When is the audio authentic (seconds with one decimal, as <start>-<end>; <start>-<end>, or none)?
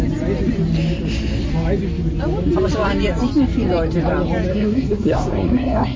0.0-4.5